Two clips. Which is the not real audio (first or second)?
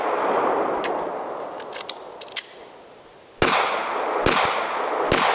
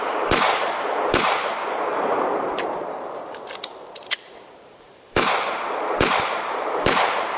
second